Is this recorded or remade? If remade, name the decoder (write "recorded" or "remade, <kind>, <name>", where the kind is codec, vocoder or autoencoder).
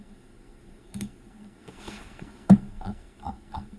remade, codec, SNAC